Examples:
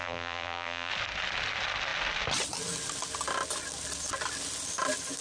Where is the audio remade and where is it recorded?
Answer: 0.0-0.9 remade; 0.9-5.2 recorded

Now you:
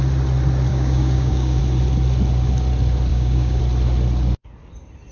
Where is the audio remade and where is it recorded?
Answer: 0.0-0.7 recorded; 0.7-1.6 remade; 1.6-3.1 recorded; 3.1-3.6 remade; 3.6-5.1 recorded

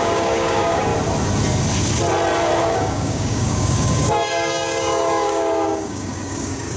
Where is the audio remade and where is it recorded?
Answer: 0.0-0.9 remade; 0.9-2.6 recorded; 2.6-6.8 remade

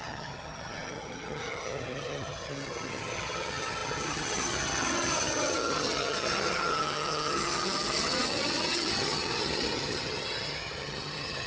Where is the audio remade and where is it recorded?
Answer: 0.0-11.5 remade

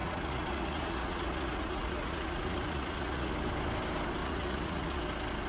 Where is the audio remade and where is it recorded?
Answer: 0.0-3.3 remade; 3.3-4.2 recorded; 4.2-5.0 remade; 5.0-5.5 recorded

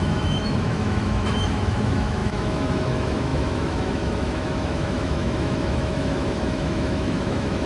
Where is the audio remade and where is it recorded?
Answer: 0.0-7.7 remade

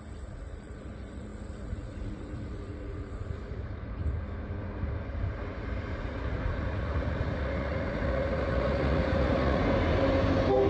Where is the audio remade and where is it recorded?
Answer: 0.0-4.0 remade; 4.0-6.0 recorded; 6.0-9.6 remade; 9.6-10.7 recorded